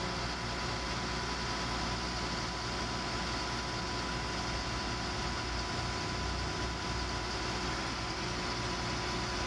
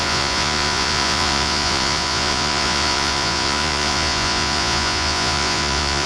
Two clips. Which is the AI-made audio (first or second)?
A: second